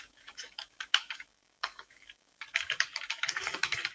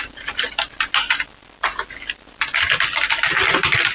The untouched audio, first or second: second